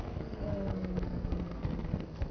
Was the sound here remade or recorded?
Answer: remade